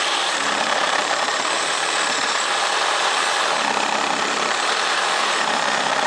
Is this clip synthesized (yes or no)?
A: yes